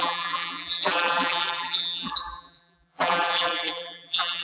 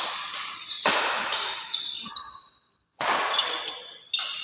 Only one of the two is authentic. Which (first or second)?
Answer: second